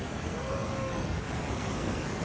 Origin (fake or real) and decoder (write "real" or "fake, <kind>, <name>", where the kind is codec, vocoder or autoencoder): fake, codec, SNAC